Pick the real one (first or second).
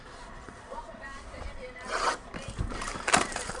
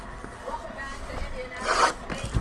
second